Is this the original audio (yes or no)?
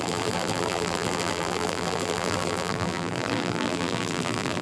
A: no